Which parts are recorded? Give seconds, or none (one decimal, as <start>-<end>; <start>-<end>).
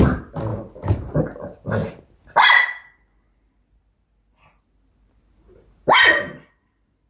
0.0-7.1